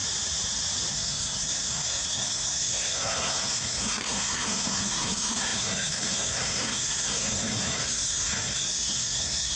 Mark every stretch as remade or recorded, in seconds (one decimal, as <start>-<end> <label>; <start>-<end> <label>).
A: 0.0-0.9 recorded; 0.9-9.6 remade